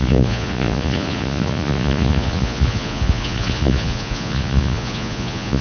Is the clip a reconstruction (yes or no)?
yes